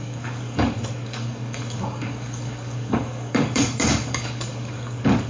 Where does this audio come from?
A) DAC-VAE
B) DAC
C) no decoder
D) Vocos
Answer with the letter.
B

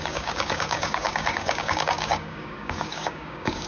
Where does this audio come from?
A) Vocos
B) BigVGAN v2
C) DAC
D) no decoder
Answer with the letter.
C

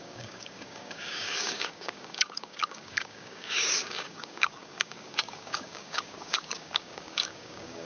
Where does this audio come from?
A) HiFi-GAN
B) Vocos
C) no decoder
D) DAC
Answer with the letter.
D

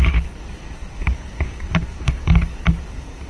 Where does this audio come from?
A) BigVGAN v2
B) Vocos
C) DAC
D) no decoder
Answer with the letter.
C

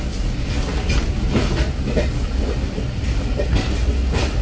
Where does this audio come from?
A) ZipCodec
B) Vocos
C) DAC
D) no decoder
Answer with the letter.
D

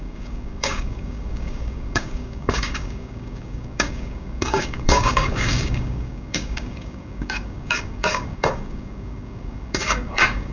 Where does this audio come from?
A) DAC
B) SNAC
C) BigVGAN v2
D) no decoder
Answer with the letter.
A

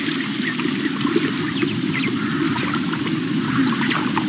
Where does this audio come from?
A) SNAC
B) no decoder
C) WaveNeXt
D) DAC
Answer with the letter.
B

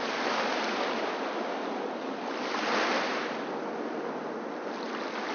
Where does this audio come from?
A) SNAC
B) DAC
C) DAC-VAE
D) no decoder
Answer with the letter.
D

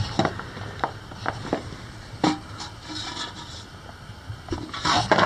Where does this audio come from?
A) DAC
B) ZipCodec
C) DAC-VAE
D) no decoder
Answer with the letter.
D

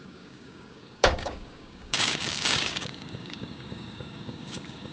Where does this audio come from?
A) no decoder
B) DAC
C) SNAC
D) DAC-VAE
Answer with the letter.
B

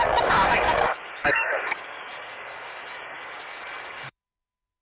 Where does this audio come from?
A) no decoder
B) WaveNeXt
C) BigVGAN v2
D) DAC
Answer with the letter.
D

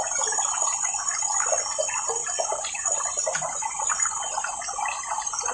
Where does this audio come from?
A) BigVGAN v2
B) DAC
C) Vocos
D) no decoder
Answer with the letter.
D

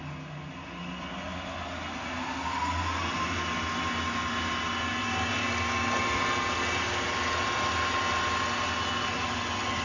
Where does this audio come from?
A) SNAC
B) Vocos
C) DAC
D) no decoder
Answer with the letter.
D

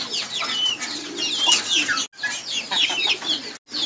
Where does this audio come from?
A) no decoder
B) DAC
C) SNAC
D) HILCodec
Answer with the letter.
A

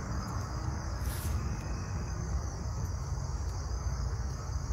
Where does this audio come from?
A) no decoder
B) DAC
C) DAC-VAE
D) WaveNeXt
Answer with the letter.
B